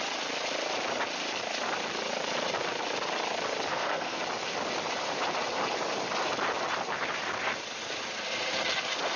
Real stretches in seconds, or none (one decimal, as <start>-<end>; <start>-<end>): 0.0-3.7; 4.2-9.2